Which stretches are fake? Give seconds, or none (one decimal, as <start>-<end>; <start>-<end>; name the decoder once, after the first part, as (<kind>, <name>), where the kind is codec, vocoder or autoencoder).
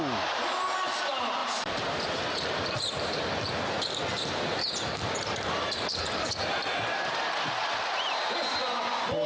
1.4-3.2 (vocoder, BigVGAN v2); 4.1-8.3